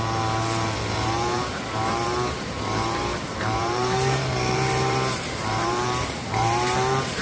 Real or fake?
fake